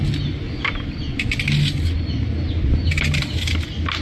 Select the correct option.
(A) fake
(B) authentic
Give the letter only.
B